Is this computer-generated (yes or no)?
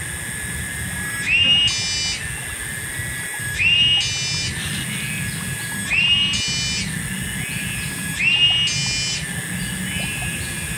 no